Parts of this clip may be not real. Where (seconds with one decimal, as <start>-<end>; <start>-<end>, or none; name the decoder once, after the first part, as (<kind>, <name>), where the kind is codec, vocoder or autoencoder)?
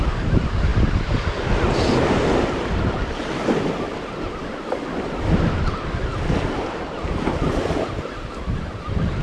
none